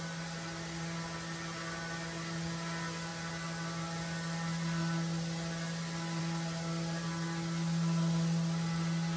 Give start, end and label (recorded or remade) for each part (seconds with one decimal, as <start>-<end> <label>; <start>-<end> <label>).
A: 0.0-9.2 recorded